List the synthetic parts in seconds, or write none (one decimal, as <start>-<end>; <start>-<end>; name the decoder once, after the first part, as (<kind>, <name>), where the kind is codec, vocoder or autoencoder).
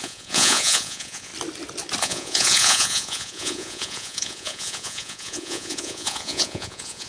0.0-1.3 (vocoder, Vocos); 2.0-7.1